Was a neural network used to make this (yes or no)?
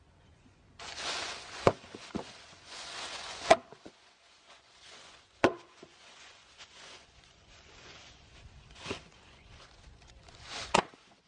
yes